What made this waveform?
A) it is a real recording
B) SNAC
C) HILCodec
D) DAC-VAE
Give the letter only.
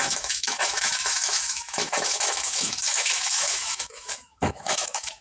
D